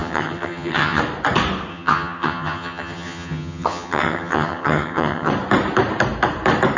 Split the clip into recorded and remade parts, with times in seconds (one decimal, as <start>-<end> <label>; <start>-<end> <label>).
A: 0.0-1.0 remade; 1.0-1.7 recorded; 1.7-5.3 remade; 5.3-6.8 recorded